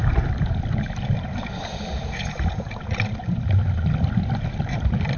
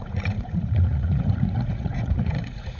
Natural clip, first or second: first